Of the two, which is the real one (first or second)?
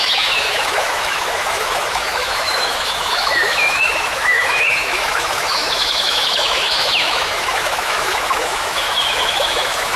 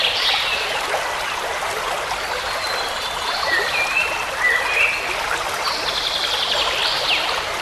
second